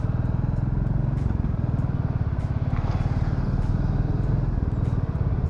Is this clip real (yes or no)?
yes